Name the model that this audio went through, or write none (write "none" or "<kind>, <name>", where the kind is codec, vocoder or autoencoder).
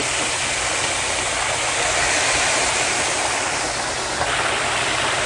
none